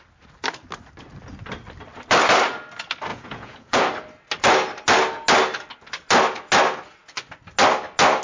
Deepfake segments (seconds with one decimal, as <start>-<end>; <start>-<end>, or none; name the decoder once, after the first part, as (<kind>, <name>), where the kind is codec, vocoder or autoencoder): 3.1-3.8 (vocoder, Vocos)